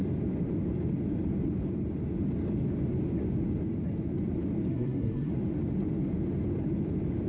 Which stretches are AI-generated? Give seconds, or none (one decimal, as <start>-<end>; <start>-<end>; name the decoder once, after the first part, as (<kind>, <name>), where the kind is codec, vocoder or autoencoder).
4.7-5.3 (codec, SNAC)